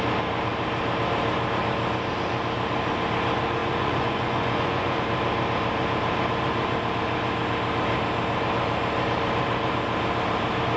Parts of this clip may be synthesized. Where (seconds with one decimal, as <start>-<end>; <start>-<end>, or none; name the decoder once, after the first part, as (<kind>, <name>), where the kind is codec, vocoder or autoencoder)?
3.6-5.0 (vocoder, Vocos)